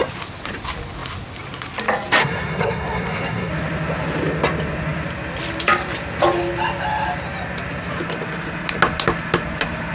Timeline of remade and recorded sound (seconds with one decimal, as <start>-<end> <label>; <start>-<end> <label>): 0.0-2.2 recorded; 2.2-3.5 remade; 3.5-9.9 recorded